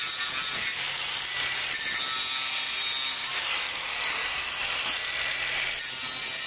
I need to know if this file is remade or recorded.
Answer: recorded